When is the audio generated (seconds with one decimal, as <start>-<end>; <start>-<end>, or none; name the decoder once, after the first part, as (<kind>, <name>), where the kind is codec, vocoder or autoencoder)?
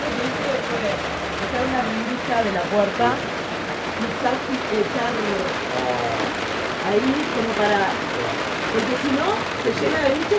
none